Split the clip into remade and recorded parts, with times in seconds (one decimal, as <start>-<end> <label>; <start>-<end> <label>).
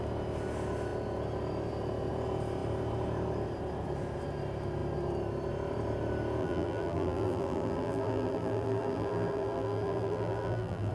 0.0-6.4 recorded; 6.4-10.9 remade